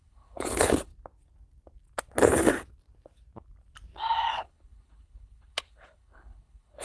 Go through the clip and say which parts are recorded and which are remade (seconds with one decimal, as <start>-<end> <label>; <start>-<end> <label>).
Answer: 0.0-0.9 remade; 0.9-4.3 recorded; 4.3-6.8 remade